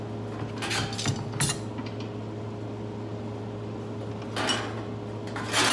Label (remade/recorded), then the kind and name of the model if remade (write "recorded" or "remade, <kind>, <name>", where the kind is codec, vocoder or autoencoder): recorded